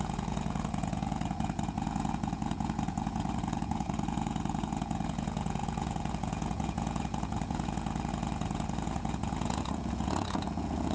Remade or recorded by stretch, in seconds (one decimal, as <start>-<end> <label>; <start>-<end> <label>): 0.0-10.9 remade